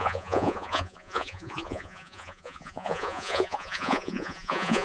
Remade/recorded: remade